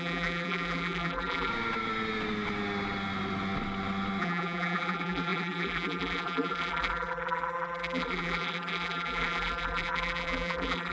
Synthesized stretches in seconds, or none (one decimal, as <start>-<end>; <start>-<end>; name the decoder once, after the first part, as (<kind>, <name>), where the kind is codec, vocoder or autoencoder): 0.0-1.5 (vocoder, BigVGAN v2); 4.2-10.9

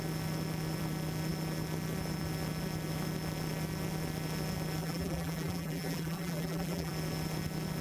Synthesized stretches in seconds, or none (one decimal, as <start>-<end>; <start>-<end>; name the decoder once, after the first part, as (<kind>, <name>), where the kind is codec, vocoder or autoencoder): 4.8-6.9 (vocoder, BigVGAN v2)

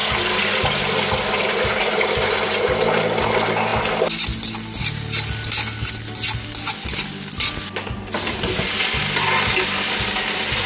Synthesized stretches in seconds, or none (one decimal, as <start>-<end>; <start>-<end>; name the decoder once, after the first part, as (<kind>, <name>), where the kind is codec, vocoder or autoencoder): none

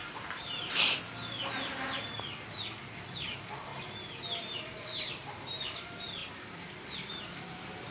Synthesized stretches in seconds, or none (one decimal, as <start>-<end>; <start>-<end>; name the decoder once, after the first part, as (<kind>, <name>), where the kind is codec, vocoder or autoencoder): 0.0-0.9 (vocoder, BigVGAN v2); 3.2-3.7; 4.4-7.9